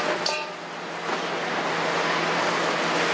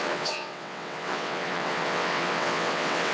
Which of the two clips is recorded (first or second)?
first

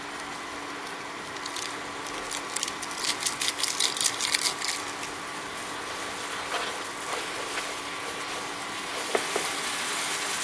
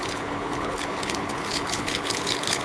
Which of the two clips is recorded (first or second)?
first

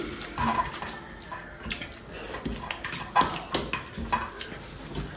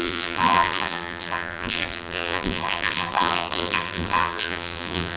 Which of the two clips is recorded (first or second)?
first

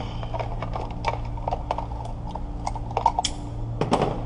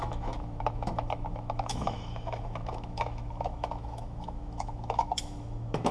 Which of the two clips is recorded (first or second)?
first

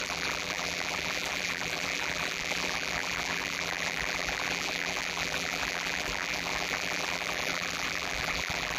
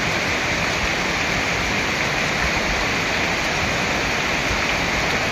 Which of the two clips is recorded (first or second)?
second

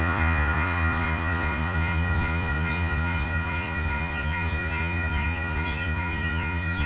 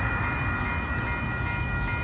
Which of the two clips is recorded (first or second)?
second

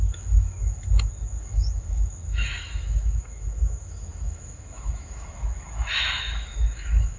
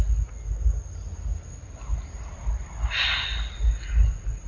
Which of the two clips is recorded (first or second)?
second